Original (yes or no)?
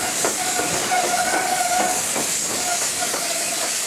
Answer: no